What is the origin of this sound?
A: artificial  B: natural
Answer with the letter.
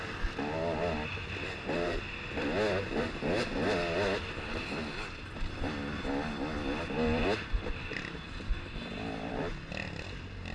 B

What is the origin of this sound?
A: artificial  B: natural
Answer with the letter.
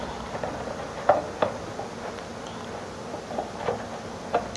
B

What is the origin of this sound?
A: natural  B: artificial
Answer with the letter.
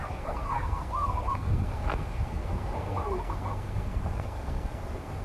B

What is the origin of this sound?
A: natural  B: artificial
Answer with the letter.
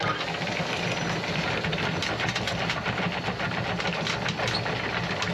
A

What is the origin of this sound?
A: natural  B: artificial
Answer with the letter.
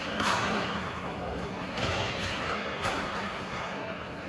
B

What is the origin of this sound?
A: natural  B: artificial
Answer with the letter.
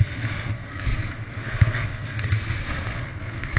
B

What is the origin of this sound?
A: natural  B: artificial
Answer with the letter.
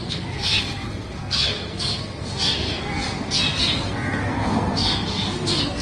B